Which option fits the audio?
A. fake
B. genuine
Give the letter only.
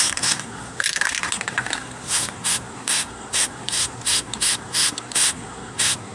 A